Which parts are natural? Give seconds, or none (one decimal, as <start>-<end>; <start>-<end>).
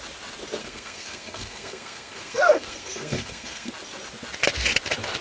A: 0.0-0.6; 3.7-5.2